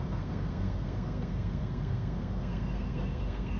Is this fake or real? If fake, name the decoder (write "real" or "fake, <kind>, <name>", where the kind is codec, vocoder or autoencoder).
fake, codec, SNAC